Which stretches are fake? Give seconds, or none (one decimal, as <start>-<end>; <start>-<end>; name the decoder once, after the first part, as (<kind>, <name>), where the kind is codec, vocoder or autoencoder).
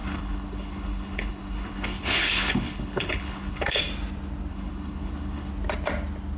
0.0-3.8 (codec, HILCodec); 4.5-5.5